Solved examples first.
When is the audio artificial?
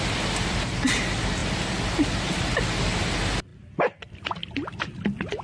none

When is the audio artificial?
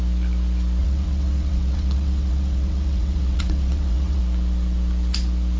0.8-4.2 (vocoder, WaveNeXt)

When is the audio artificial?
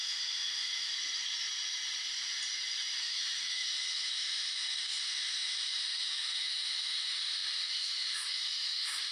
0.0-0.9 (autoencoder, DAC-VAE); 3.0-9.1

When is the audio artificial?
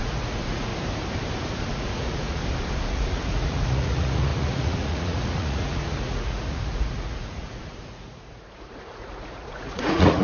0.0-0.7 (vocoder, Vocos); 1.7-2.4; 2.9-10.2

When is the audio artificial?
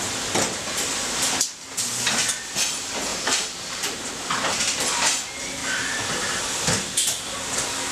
3.1-4.1 (vocoder, BigVGAN v2)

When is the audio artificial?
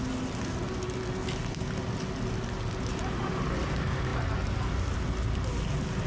none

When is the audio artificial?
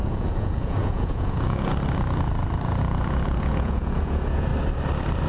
0.0-1.7 (vocoder, Vocos); 2.8-4.5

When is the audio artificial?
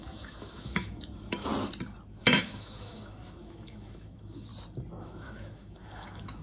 0.0-1.5 (autoencoder, DAC-VAE); 2.2-4.5; 5.0-6.4